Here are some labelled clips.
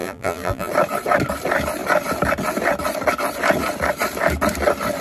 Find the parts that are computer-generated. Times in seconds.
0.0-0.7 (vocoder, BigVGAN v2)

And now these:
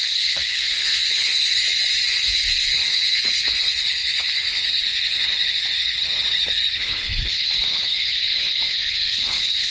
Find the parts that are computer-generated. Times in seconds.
0.0-1.6 (codec, HILCodec); 2.1-9.7